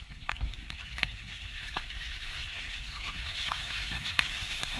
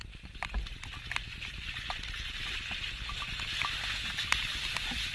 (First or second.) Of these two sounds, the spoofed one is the first